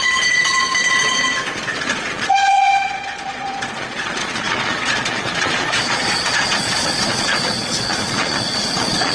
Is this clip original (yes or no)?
no